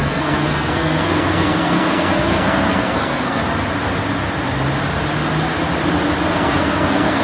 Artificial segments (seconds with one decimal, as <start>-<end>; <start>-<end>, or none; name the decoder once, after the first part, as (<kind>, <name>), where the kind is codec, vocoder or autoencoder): 0.0-3.4 (codec, SNAC); 6.3-7.2